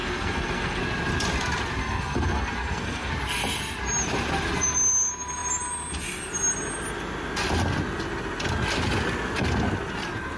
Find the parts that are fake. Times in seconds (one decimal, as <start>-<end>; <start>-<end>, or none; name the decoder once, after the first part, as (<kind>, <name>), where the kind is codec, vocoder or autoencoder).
0.0-0.8 (codec, SNAC); 1.8-3.1